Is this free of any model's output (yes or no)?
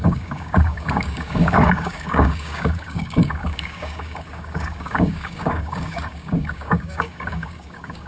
no